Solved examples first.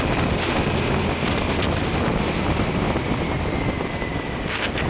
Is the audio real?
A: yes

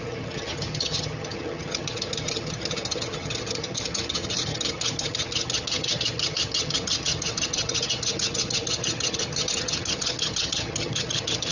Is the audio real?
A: no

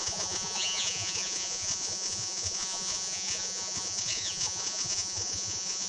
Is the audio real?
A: no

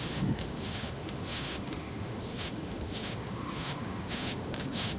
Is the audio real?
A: no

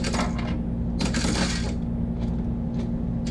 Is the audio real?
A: yes